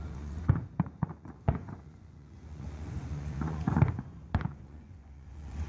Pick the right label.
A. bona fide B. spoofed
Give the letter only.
B